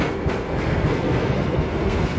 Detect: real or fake fake